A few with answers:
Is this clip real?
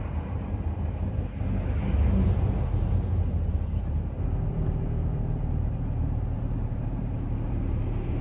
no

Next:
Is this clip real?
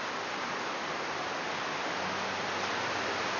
yes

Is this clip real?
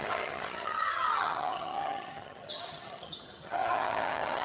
no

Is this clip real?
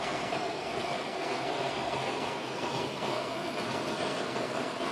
no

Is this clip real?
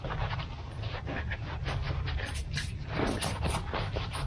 yes